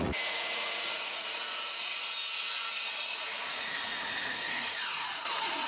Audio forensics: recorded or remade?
remade